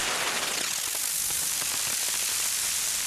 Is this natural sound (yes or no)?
yes